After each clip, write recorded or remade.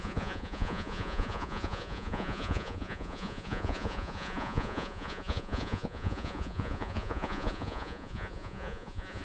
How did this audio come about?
remade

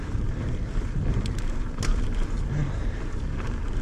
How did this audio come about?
recorded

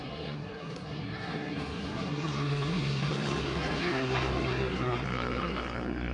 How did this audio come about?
remade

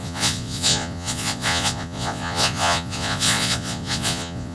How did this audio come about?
remade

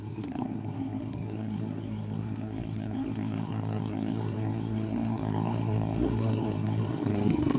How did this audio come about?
remade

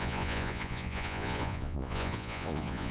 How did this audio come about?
remade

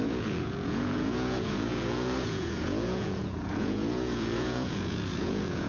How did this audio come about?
remade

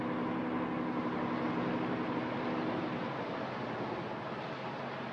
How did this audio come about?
recorded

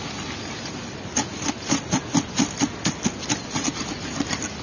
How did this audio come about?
recorded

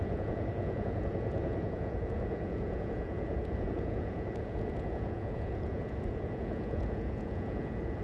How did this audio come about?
remade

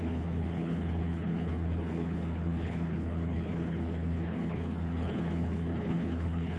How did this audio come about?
remade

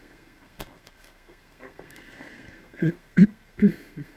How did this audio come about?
remade